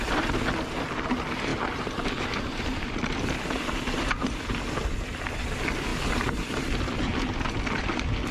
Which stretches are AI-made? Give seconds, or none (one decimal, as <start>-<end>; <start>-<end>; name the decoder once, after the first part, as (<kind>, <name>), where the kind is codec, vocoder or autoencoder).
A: none